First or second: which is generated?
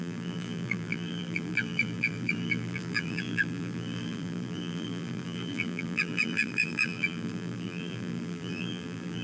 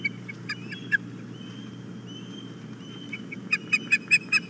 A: first